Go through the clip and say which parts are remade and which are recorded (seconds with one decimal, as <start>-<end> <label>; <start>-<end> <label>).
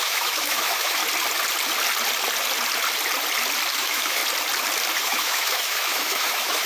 0.0-1.0 remade; 1.0-3.8 recorded; 3.8-4.2 remade; 4.2-4.9 recorded; 4.9-6.7 remade